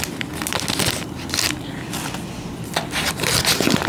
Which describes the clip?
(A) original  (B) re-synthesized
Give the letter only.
A